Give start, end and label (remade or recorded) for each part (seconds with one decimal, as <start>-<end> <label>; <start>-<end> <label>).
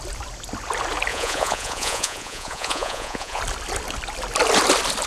0.0-1.1 recorded; 1.1-3.4 remade; 3.4-5.1 recorded